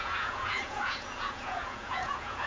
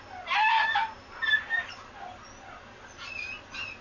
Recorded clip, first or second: second